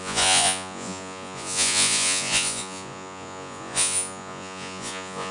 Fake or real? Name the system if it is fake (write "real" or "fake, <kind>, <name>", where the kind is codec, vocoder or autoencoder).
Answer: fake, vocoder, Vocos